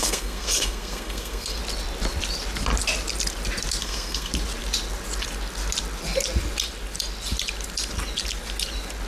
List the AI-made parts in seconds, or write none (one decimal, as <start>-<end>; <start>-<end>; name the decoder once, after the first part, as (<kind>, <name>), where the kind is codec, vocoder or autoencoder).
0.0-1.6 (codec, SNAC); 3.8-4.3